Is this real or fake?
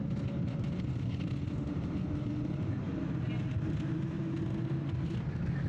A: real